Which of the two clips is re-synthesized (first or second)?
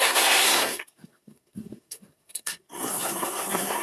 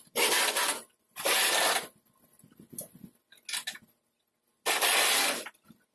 first